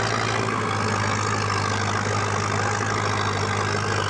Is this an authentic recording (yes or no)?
yes